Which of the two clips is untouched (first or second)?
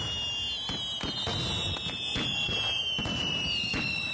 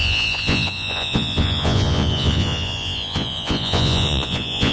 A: first